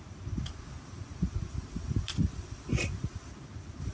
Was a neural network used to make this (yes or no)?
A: no